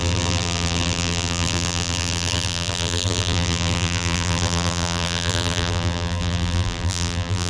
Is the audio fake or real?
fake